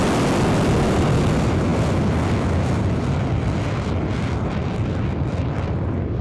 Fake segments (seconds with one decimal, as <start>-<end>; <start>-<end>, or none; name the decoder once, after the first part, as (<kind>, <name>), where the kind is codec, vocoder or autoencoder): none